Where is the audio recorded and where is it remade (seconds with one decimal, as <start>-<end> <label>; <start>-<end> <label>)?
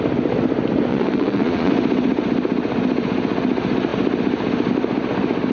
0.0-0.9 recorded; 0.9-1.7 remade; 1.7-5.5 recorded